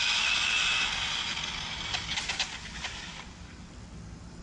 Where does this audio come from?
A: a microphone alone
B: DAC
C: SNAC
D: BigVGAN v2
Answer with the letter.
A